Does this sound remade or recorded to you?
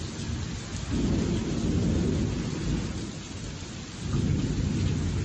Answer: recorded